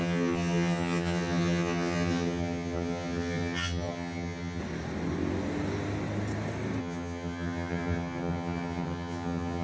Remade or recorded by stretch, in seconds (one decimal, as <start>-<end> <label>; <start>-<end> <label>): 0.0-4.6 remade; 4.6-6.8 recorded; 6.8-9.6 remade